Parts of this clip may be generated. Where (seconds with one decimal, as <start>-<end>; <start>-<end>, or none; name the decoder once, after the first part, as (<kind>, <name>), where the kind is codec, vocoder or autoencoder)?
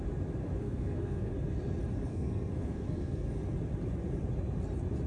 0.4-1.3 (codec, SNAC); 2.1-3.3